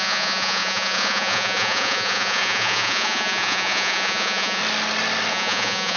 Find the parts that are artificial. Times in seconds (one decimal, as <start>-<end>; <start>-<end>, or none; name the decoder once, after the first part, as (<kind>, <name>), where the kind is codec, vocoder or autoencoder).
0.0-4.6 (vocoder, Vocos); 5.3-6.0